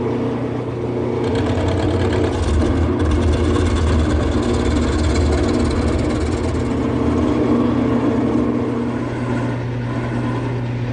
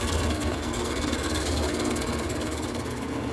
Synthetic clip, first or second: second